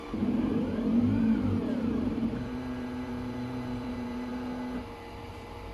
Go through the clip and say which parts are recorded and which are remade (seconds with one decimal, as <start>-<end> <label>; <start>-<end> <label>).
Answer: 0.0-4.3 remade; 4.3-5.3 recorded; 5.3-5.7 remade

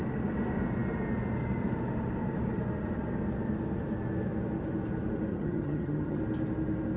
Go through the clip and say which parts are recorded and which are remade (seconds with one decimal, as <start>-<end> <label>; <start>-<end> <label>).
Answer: 0.0-5.3 recorded; 5.3-6.2 remade; 6.2-7.0 recorded

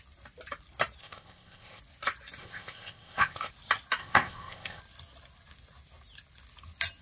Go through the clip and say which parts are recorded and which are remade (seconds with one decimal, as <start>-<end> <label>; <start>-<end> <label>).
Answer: 0.0-1.0 recorded; 1.0-1.8 remade; 1.8-2.4 recorded; 2.4-3.5 remade; 3.5-4.0 recorded; 4.0-4.8 remade; 4.8-7.0 recorded

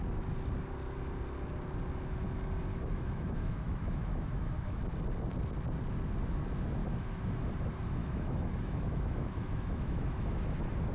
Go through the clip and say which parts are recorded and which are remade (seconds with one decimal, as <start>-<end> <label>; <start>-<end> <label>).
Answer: 0.0-2.7 recorded; 2.7-4.8 remade; 4.8-6.8 recorded; 6.8-7.4 remade; 7.4-8.0 recorded; 8.0-10.3 remade; 10.3-10.9 recorded

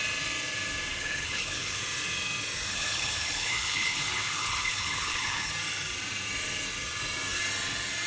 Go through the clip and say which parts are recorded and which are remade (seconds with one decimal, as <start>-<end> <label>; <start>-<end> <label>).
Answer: 0.0-0.9 recorded; 0.9-1.8 remade; 1.8-2.7 recorded; 2.7-5.5 remade; 5.5-8.1 recorded

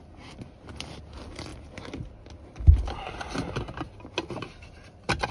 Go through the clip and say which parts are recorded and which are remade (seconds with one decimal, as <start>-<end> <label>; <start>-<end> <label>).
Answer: 0.0-5.3 recorded

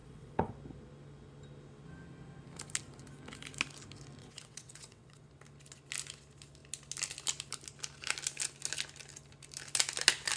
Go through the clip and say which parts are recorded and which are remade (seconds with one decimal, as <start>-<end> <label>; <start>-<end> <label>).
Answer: 0.0-0.5 remade; 0.5-4.2 recorded; 4.2-5.3 remade; 5.3-10.4 recorded